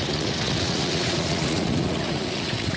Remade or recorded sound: remade